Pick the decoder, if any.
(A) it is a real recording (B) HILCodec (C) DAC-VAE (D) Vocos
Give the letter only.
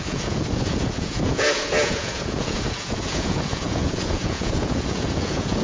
D